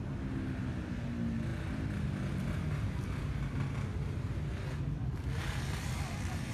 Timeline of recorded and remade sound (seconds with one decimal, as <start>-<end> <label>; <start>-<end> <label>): 0.0-6.5 recorded